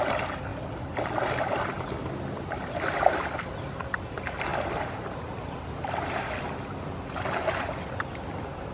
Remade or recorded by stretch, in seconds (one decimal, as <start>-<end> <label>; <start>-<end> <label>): 0.0-8.7 recorded